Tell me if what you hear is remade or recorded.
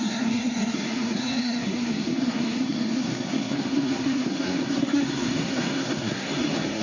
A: remade